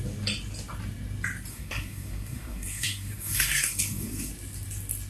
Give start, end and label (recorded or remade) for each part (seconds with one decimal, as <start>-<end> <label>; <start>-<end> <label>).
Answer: 0.0-1.5 recorded; 1.5-4.3 remade; 4.3-5.1 recorded